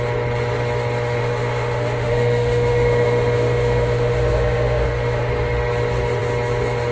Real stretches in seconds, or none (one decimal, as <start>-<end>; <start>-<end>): 0.0-1.2; 5.3-6.9